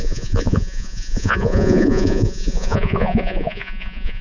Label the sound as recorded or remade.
remade